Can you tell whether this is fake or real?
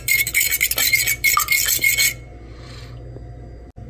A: real